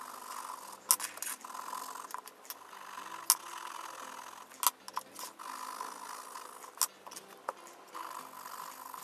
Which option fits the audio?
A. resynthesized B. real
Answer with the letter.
B